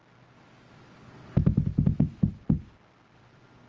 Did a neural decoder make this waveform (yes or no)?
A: no